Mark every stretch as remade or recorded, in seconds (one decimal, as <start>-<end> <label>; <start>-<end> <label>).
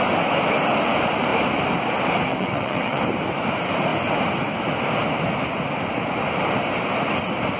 0.0-2.3 recorded; 2.3-3.0 remade; 3.0-7.6 recorded